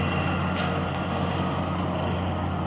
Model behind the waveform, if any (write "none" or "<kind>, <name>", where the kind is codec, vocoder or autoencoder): none